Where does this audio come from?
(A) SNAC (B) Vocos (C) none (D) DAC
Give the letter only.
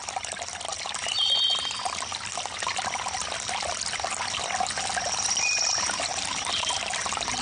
C